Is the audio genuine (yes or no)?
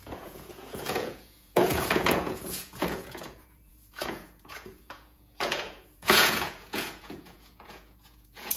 no